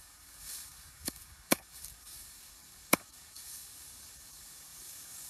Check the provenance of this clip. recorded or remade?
remade